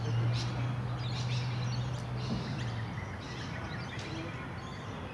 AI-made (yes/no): no